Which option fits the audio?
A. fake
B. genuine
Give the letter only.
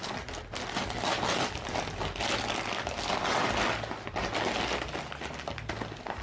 B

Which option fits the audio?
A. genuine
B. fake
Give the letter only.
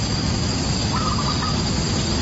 A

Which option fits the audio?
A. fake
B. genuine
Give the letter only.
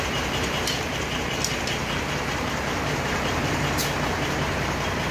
A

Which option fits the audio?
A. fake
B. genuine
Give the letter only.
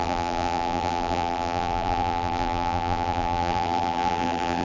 A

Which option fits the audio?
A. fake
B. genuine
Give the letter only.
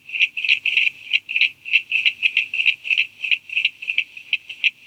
B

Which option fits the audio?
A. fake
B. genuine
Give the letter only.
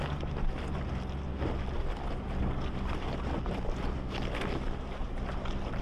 B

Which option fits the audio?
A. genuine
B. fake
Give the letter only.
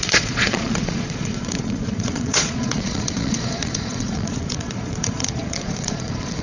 B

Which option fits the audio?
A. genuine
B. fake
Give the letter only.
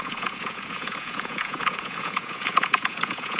B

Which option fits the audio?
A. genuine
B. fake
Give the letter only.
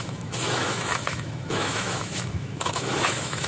B